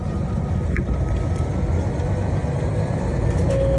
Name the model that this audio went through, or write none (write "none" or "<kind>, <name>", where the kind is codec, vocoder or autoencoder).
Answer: none